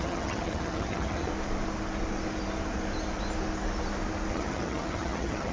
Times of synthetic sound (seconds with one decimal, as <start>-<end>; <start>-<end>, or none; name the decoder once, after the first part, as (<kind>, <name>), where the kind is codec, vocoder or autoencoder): 0.0-1.3 (vocoder, HiFi-GAN); 4.3-5.5